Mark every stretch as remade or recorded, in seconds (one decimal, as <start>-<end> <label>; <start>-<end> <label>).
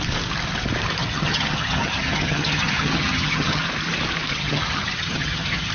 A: 0.0-1.0 recorded; 1.0-3.6 remade; 3.6-4.3 recorded; 4.3-5.7 remade